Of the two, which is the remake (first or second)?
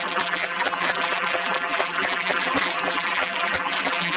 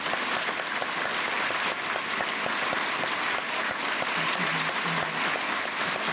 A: first